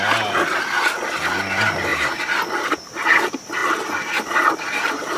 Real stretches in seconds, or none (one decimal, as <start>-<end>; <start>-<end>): 0.0-5.2